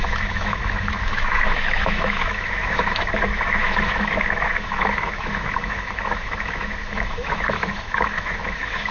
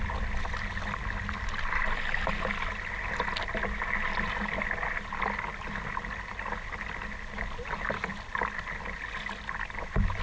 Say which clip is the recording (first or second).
second